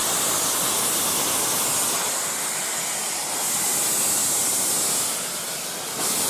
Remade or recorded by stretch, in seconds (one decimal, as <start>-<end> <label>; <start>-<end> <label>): 0.0-6.3 recorded